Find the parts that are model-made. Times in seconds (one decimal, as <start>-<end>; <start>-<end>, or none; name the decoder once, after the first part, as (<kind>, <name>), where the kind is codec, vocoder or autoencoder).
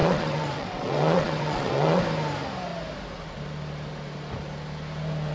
0.0-2.0 (vocoder, WaveNeXt)